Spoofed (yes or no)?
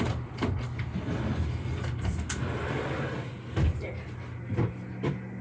no